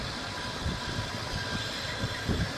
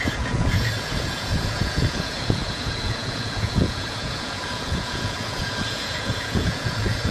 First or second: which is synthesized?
second